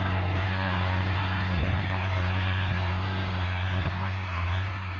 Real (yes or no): no